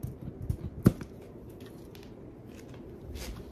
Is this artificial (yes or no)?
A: no